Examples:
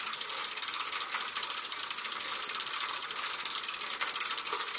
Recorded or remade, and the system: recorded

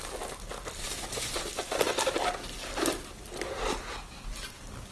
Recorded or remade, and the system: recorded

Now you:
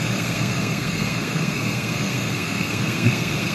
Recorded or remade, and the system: remade, codec, SNAC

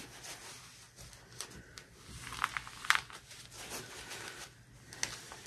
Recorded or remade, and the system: recorded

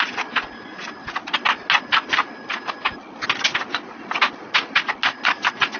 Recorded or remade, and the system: recorded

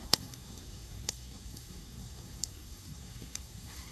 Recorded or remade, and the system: remade, codec, SNAC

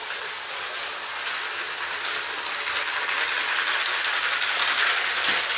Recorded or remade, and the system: recorded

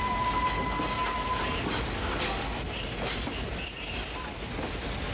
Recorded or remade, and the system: recorded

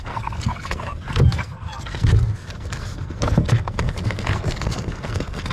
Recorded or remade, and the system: remade, codec, SNAC